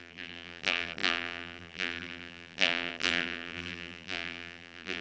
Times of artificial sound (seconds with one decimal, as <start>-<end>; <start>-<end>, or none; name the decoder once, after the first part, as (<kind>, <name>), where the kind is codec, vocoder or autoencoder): 0.0-5.0 (vocoder, BigVGAN v2)